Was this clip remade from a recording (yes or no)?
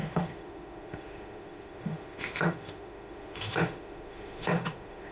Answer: yes